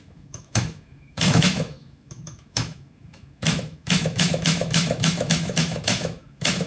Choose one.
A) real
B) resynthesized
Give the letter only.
B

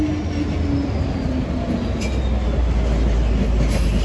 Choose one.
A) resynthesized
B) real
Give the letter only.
B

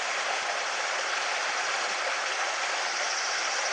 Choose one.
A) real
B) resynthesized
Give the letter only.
A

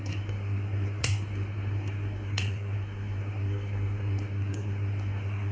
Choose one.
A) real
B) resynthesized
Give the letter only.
B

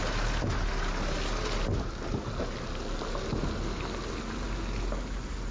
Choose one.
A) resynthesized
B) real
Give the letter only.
B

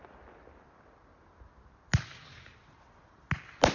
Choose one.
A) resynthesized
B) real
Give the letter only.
B